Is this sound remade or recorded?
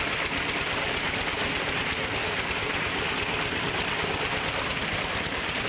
recorded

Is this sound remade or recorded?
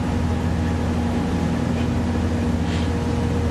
recorded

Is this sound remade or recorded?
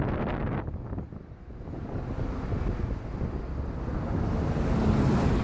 recorded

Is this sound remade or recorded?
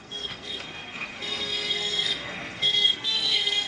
remade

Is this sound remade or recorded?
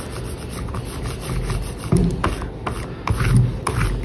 recorded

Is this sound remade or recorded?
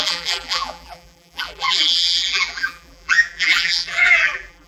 remade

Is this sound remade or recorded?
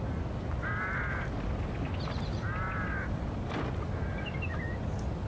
recorded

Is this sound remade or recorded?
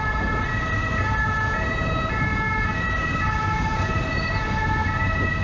recorded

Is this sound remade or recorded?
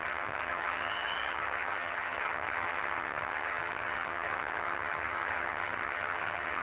remade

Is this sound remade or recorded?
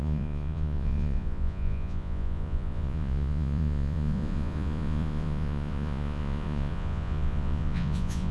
remade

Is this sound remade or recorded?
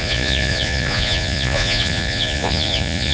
remade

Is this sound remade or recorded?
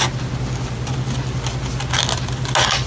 recorded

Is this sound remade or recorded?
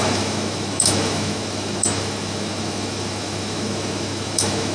remade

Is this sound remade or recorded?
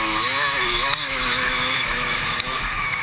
remade